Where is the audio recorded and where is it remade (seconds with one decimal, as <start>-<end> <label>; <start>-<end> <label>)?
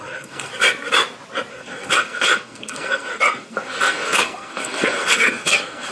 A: 0.0-0.5 remade; 0.5-1.5 recorded; 1.5-5.9 remade